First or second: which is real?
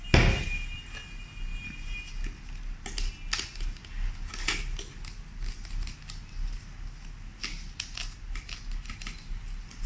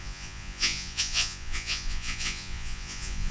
first